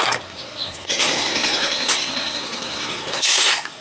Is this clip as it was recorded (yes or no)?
no